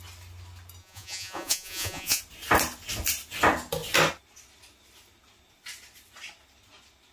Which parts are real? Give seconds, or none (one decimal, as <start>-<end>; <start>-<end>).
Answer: 0.0-0.8; 2.2-7.1